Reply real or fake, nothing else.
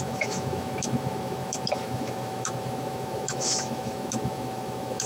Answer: fake